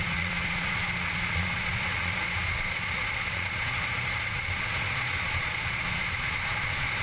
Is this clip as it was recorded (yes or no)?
no